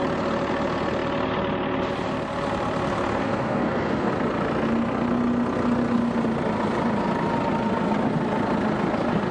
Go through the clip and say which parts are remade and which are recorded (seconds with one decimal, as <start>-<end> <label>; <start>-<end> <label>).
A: 0.0-3.2 recorded; 3.2-4.1 remade; 4.1-9.3 recorded